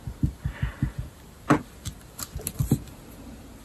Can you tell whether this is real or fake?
real